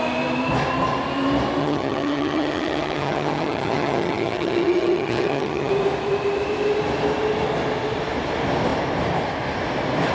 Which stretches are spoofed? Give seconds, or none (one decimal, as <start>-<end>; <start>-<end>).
1.6-5.7